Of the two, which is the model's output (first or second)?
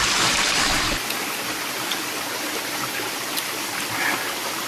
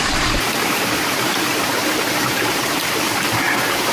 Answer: second